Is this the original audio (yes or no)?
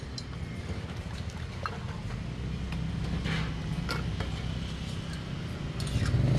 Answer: yes